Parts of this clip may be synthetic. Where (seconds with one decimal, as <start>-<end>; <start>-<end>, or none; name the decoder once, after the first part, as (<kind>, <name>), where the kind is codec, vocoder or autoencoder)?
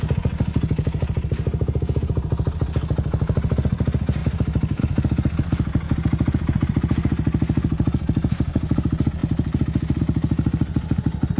none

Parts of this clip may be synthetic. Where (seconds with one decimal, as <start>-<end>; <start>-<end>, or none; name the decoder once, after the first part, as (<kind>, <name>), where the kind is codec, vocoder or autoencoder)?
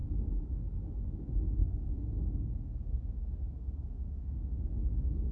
1.6-4.8 (codec, SNAC)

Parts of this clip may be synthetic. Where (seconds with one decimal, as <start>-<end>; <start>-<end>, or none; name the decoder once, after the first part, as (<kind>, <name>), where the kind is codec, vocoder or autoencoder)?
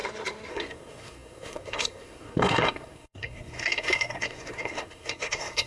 0.5-5.7 (codec, SNAC)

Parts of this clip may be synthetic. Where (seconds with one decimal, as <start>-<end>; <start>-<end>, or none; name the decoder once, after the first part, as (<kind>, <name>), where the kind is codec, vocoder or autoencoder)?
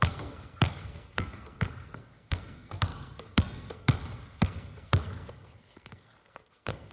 0.0-6.9 (codec, SNAC)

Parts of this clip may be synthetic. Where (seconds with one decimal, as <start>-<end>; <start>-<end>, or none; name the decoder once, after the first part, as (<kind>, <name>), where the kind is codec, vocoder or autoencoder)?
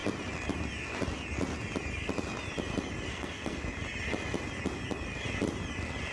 3.1-3.6 (codec, SNAC)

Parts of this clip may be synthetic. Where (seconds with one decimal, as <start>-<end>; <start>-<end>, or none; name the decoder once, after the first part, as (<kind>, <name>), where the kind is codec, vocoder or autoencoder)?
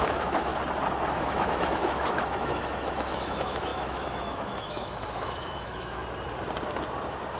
0.0-0.5 (autoencoder, DAC-VAE); 1.1-6.0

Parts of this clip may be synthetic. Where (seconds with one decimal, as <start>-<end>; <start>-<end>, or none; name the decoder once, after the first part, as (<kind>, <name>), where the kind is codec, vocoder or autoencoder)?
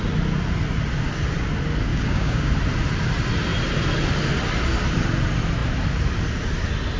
1.9-2.5 (codec, DAC)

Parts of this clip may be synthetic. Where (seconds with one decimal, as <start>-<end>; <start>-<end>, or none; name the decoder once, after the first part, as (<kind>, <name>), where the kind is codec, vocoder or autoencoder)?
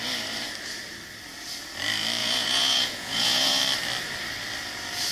2.2-3.6 (vocoder, Vocos)